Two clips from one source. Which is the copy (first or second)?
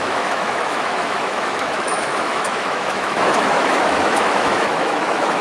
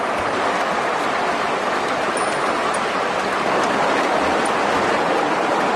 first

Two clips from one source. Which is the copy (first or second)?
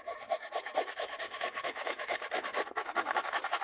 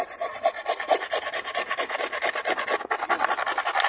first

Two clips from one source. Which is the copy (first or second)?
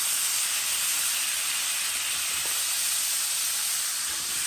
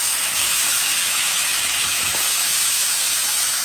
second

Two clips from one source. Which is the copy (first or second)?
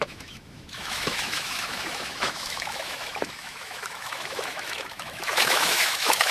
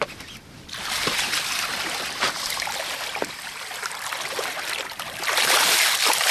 first